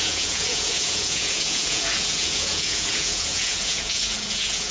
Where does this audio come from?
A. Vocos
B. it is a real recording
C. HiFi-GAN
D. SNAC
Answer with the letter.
A